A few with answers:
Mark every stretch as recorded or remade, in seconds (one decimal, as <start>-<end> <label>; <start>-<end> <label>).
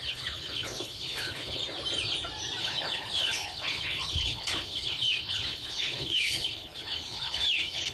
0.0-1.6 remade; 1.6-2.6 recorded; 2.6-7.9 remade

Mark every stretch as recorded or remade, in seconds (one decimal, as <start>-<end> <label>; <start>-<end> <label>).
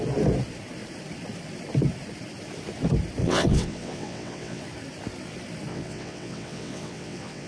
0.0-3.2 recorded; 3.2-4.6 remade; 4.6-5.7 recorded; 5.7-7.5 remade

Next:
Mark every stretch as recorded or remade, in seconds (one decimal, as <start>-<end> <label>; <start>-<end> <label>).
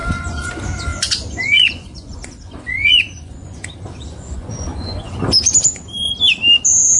0.0-0.5 remade; 0.5-0.9 recorded; 0.9-5.1 remade; 5.1-7.0 recorded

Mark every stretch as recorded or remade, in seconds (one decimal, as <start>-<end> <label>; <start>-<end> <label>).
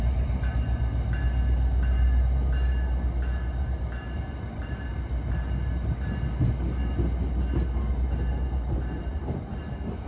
0.0-10.1 recorded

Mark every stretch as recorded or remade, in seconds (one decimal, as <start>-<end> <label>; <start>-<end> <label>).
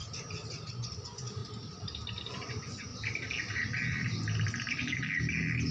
0.0-0.7 recorded; 0.7-1.4 remade; 1.4-2.3 recorded; 2.3-2.9 remade; 2.9-5.7 recorded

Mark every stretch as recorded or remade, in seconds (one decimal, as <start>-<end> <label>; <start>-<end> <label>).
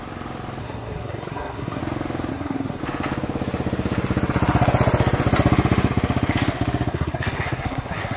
0.0-0.6 recorded; 0.6-1.8 remade; 1.8-2.3 recorded; 2.3-2.8 remade; 2.8-6.9 recorded; 6.9-8.2 remade